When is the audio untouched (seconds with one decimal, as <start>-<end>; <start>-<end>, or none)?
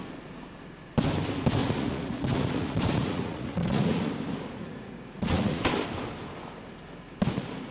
0.0-1.6; 4.1-4.6; 5.6-7.7